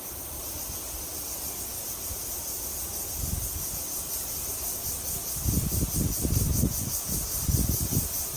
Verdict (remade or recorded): recorded